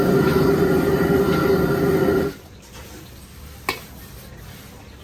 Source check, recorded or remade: recorded